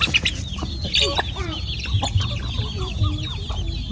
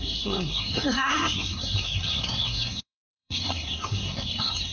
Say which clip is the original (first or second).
first